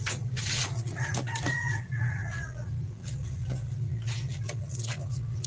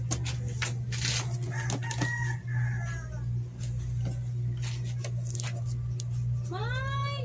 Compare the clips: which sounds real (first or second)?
second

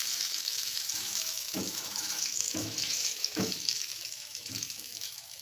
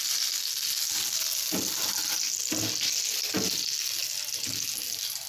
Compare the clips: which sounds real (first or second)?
second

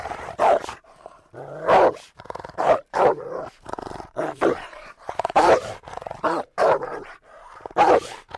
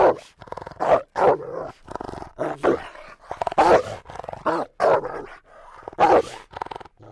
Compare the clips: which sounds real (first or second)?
second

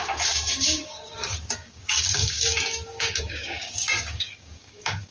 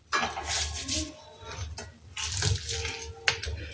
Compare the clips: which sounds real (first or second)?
second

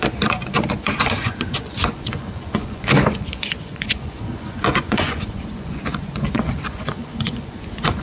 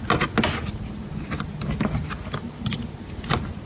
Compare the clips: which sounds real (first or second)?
second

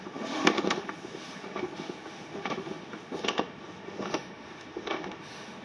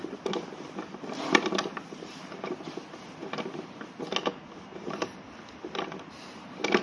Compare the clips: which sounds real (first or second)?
second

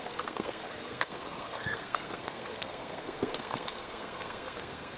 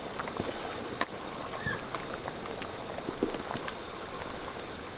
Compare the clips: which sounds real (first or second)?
second